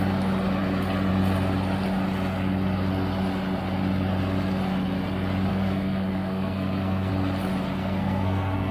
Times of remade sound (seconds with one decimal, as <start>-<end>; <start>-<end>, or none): 5.5-7.1; 7.8-8.7